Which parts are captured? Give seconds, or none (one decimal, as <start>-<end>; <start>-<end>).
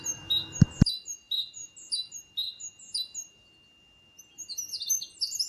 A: 0.0-5.5